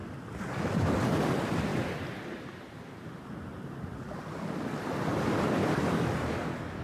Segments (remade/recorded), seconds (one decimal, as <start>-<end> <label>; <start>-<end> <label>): 0.0-6.8 recorded